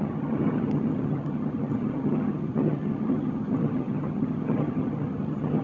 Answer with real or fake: fake